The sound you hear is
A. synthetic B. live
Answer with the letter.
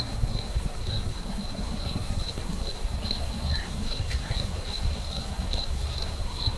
A